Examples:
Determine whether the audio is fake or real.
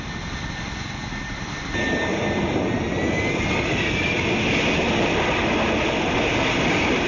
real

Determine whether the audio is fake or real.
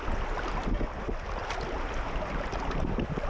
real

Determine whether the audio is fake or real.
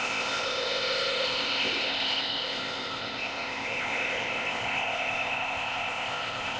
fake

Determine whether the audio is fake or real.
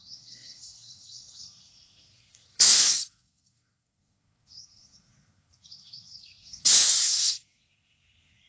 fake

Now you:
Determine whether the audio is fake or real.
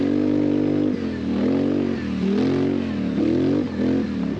real